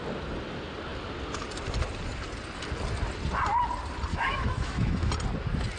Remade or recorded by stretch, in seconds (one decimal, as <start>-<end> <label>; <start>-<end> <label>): 0.0-4.1 recorded; 4.1-5.1 remade; 5.1-5.8 recorded